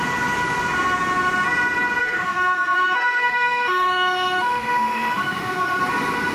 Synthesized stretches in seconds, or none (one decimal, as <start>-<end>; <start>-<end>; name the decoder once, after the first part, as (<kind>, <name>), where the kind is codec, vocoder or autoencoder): 2.0-5.8 (autoencoder, DAC-VAE)